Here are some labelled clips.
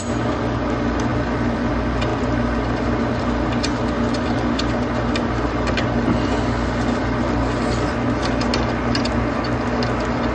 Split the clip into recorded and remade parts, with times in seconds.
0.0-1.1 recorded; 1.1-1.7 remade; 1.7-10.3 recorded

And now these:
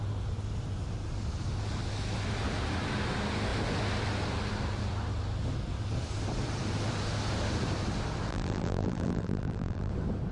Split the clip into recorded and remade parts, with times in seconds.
0.0-8.3 recorded; 8.3-9.9 remade; 9.9-10.3 recorded

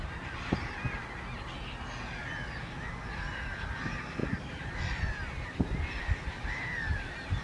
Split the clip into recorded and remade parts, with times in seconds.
0.0-7.4 recorded